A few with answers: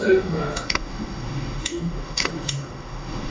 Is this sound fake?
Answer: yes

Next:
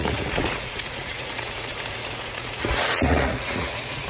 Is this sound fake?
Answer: yes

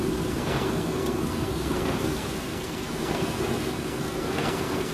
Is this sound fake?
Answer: yes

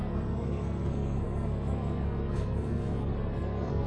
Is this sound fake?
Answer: yes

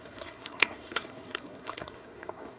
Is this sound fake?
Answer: yes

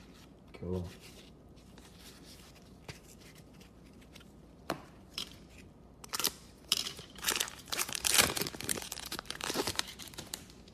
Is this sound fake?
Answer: yes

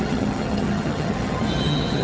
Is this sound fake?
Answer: yes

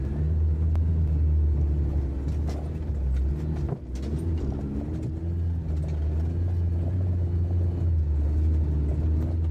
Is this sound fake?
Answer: no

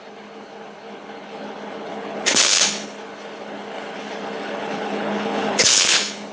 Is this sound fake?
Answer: yes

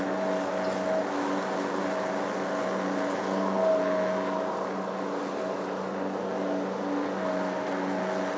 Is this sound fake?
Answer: no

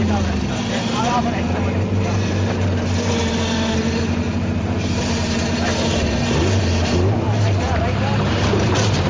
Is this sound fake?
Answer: yes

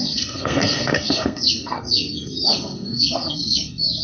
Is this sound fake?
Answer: yes